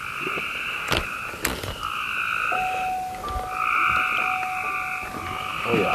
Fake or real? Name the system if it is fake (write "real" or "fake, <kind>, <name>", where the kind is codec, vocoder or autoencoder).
real